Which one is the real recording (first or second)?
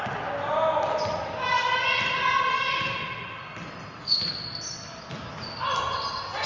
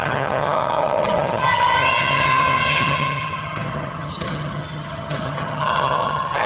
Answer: first